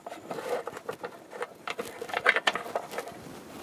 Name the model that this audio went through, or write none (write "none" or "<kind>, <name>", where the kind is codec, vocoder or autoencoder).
vocoder, BigVGAN v2